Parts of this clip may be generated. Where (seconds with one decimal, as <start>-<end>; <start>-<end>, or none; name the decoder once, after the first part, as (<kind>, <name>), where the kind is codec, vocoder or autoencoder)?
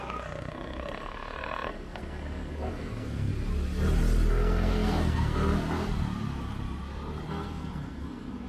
0.0-3.3 (codec, SNAC); 4.3-5.5; 7.3-8.5